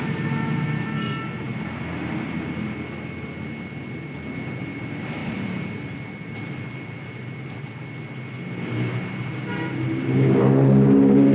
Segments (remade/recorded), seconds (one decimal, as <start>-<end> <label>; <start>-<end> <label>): 0.0-5.2 recorded; 5.2-7.8 remade; 7.8-11.3 recorded